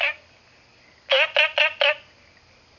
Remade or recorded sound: recorded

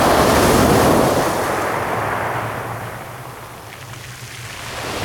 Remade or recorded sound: recorded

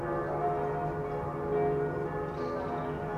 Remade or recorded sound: recorded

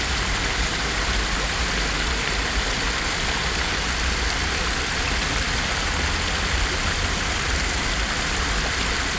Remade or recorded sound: recorded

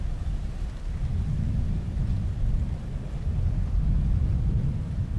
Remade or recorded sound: recorded